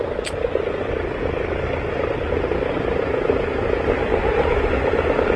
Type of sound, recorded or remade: recorded